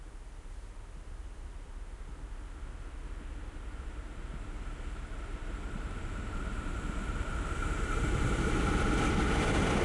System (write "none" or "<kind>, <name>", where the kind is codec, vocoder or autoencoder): none